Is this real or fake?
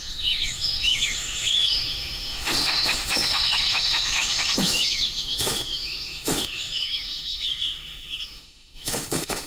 fake